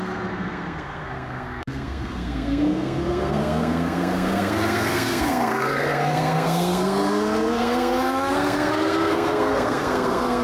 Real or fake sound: fake